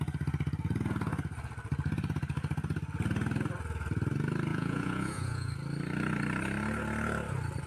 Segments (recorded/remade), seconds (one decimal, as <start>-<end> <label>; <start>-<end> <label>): 0.0-4.5 recorded; 4.5-5.5 remade; 5.5-7.7 recorded